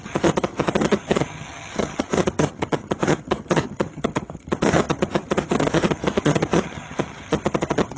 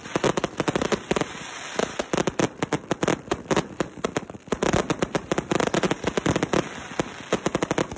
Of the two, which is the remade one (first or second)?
first